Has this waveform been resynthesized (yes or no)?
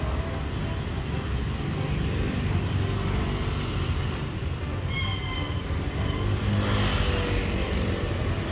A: no